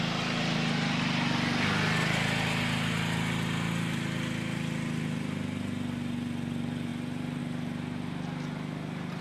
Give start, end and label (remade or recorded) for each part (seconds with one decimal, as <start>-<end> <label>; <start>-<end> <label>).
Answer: 0.0-6.9 recorded; 6.9-7.4 remade; 7.4-9.2 recorded